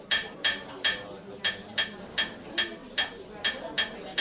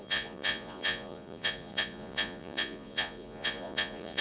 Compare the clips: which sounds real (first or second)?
first